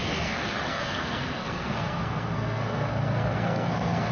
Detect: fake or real fake